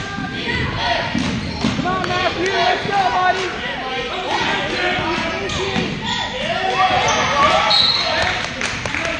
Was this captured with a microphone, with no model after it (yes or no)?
yes